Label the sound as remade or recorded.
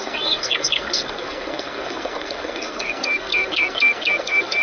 remade